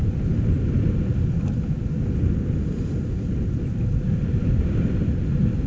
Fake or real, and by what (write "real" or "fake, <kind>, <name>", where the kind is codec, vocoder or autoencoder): real